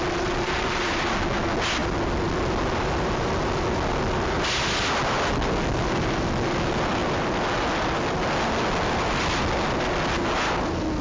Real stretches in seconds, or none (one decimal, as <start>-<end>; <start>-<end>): 0.0-11.0